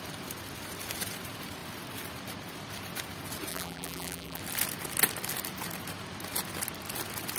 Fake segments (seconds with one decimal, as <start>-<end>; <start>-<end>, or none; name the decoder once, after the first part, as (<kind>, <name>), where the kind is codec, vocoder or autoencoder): 3.5-4.4 (vocoder, BigVGAN v2)